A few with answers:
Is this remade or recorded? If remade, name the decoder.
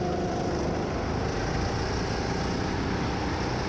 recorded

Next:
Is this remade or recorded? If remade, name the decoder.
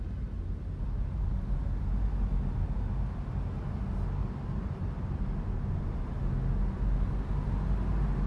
recorded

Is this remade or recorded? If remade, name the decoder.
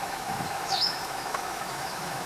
remade, autoencoder, DAC-VAE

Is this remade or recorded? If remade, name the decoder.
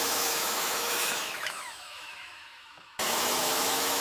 remade, autoencoder, DAC-VAE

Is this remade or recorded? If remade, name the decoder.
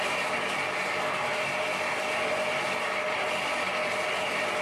recorded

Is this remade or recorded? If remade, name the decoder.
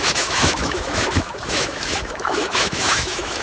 remade, autoencoder, DAC-VAE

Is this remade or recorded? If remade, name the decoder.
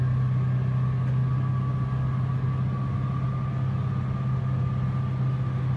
recorded